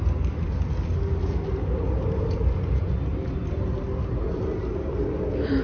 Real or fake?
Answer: real